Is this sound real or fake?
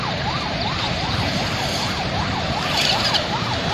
fake